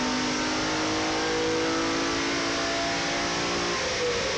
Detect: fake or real real